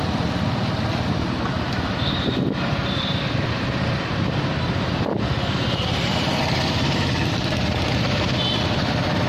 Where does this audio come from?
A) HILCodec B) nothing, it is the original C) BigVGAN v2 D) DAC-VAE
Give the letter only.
C